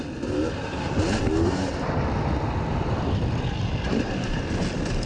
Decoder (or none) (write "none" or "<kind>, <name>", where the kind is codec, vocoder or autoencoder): none